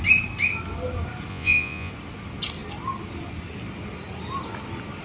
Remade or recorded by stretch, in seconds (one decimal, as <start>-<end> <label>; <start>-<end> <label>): 0.0-1.3 recorded; 1.3-1.9 remade; 1.9-5.0 recorded